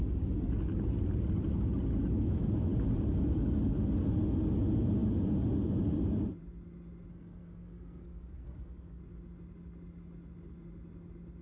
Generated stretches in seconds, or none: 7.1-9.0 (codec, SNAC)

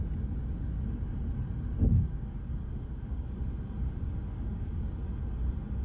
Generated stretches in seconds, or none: 1.9-3.4 (codec, DAC); 4.3-4.9

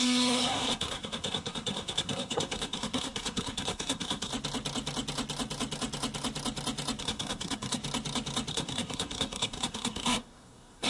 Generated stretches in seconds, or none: 0.0-4.3 (codec, SNAC); 7.0-7.8; 8.5-10.9